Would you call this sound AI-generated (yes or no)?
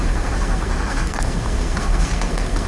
yes